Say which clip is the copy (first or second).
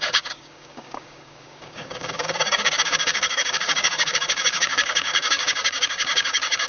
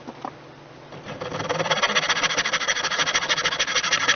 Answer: first